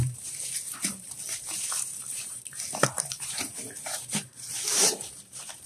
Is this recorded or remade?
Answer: remade